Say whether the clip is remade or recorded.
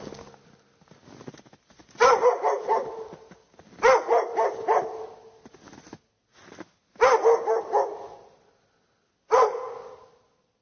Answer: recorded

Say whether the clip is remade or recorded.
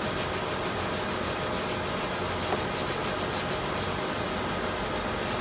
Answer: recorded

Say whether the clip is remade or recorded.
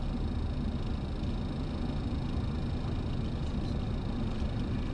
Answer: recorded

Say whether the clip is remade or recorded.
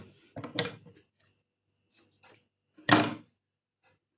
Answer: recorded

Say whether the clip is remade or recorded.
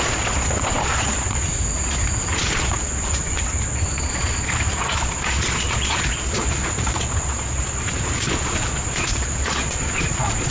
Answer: remade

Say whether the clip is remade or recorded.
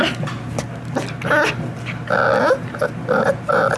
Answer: recorded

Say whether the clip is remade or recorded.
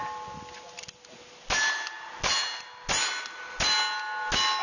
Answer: recorded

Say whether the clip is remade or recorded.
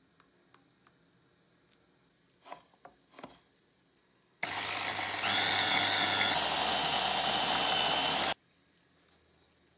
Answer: recorded